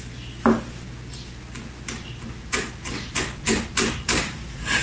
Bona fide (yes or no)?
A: yes